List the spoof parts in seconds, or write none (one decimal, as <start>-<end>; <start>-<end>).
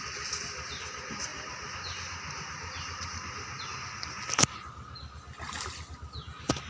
none